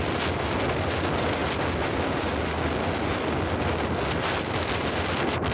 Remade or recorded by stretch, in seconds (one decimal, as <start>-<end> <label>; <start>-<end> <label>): 0.0-5.5 recorded